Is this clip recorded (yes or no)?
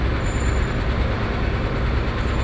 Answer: yes